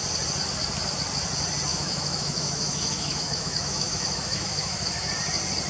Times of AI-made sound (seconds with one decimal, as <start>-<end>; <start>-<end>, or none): 1.7-5.1